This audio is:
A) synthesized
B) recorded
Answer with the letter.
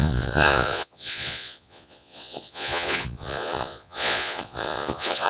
A